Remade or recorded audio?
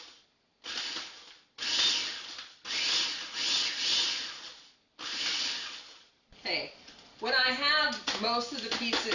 recorded